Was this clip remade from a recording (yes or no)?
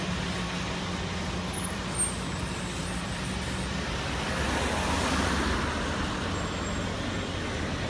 no